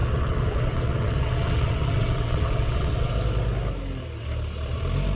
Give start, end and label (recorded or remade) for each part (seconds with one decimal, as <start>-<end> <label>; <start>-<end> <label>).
0.0-3.1 remade; 3.1-5.2 recorded